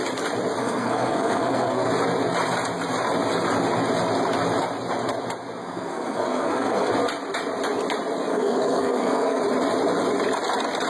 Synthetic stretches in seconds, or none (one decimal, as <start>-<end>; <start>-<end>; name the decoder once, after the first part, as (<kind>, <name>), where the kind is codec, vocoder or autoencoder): 0.6-1.9 (codec, SNAC); 5.6-6.9; 8.3-9.4